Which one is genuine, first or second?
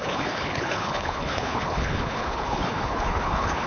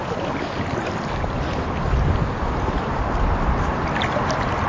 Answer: second